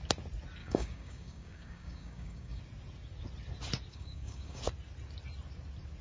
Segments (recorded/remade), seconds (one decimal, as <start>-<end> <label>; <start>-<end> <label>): 0.0-0.6 recorded; 0.6-2.6 remade; 2.6-3.9 recorded; 3.9-4.6 remade; 4.6-6.0 recorded